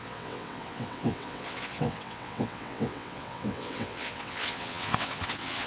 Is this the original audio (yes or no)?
no